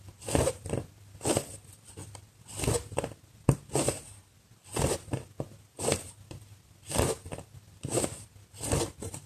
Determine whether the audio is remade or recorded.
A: recorded